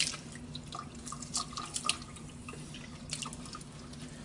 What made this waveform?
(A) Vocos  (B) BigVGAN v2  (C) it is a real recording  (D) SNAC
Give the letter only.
C